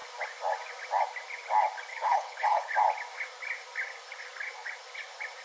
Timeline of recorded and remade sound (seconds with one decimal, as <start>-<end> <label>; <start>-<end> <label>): 0.0-1.9 recorded; 1.9-2.7 remade; 2.7-5.4 recorded